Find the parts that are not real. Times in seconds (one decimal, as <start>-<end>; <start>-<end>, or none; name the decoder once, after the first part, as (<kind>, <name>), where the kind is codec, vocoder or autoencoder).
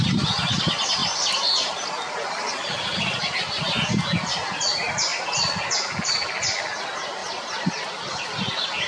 5.1-6.0 (vocoder, BigVGAN v2); 7.2-8.4